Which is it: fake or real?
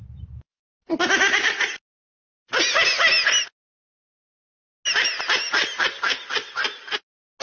real